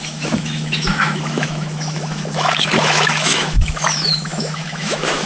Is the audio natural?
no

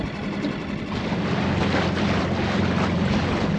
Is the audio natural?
yes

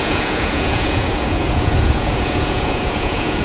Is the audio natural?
no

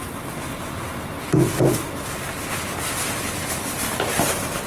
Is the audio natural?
yes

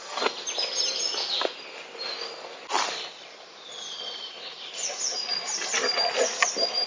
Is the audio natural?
yes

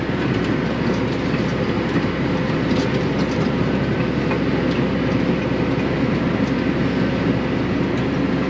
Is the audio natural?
yes